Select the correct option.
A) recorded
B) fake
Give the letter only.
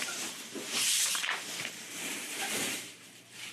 B